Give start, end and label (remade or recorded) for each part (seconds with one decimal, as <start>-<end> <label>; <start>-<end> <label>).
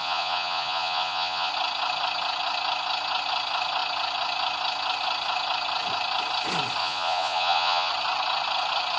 0.0-1.5 remade; 1.5-6.8 recorded; 6.8-7.9 remade; 7.9-9.0 recorded